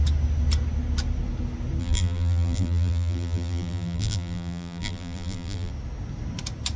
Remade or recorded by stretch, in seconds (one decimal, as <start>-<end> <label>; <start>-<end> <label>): 0.0-1.8 recorded; 1.8-5.7 remade; 5.7-6.8 recorded